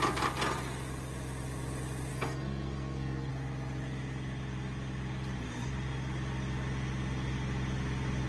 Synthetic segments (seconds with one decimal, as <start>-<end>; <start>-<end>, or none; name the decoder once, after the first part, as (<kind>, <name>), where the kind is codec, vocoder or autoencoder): 2.1-3.3 (codec, SNAC)